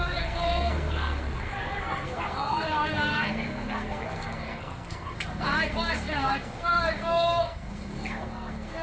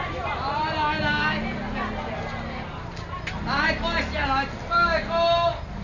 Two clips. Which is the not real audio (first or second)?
first